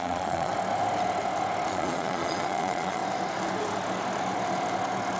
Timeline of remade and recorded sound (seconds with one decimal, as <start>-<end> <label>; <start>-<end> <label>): 0.0-0.5 remade; 0.5-1.7 recorded; 1.7-3.0 remade; 3.0-5.2 recorded